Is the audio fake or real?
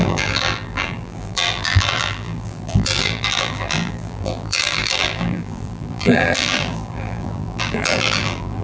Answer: fake